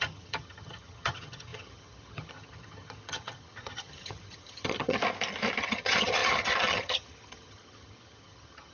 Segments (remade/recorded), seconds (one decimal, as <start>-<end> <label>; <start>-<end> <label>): 0.0-5.0 remade; 5.0-5.6 recorded; 5.6-8.7 remade

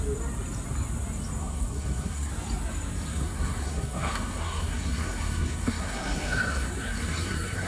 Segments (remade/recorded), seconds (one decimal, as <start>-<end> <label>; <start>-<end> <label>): 0.0-1.4 recorded; 1.4-2.3 remade; 2.3-3.1 recorded; 3.1-7.7 remade

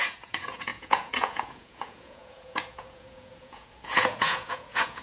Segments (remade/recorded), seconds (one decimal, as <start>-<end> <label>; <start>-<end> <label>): 0.0-5.0 remade

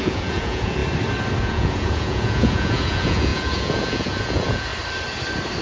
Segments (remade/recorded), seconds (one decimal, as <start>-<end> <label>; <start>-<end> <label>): 0.0-0.8 remade; 0.8-1.4 recorded; 1.4-4.7 remade; 4.7-5.6 recorded

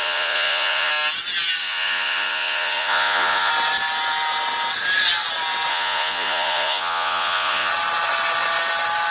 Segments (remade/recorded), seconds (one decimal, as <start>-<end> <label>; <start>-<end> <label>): 0.0-0.9 remade; 0.9-1.6 recorded; 1.6-3.5 remade; 3.5-5.7 recorded; 5.7-7.7 remade; 7.7-9.1 recorded

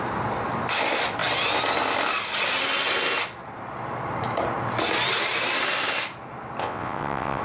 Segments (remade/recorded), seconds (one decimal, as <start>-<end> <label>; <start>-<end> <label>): 0.0-6.6 recorded; 6.6-7.4 remade

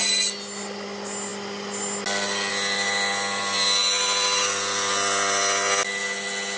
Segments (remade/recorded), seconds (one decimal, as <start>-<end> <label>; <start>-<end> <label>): 0.0-6.6 recorded